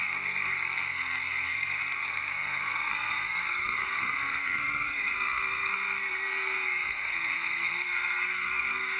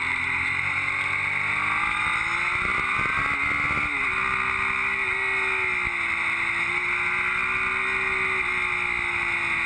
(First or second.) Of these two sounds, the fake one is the first